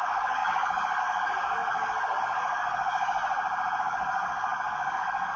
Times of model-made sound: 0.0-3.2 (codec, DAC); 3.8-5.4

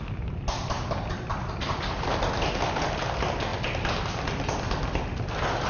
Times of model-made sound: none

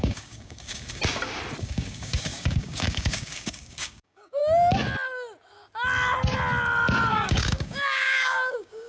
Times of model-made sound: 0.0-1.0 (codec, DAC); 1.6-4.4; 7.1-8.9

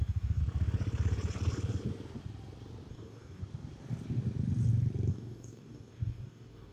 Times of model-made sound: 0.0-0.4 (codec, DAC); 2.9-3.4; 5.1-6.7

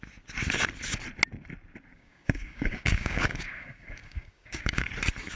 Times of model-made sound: 1.9-4.9 (codec, DAC)